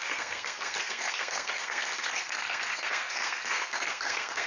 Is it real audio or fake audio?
fake